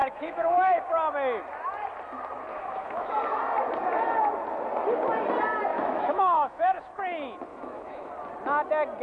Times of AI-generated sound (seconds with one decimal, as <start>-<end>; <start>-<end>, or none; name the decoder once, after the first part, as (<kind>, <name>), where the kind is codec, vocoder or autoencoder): 0.0-0.8 (autoencoder, DAC-VAE); 2.5-3.1; 5.7-7.0; 7.5-8.1